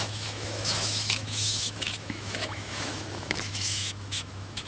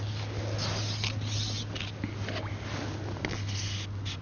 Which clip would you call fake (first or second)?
first